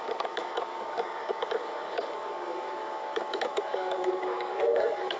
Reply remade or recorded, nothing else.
remade